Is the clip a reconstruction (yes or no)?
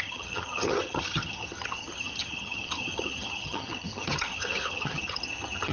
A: yes